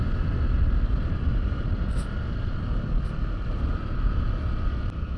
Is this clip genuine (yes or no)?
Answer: yes